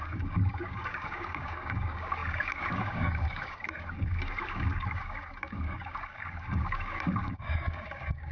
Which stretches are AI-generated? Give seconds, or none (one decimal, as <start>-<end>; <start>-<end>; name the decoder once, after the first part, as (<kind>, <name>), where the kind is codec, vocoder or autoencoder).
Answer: 0.0-8.3 (codec, DAC)